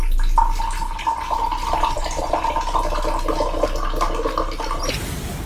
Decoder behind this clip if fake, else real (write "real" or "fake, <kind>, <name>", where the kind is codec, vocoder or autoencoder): real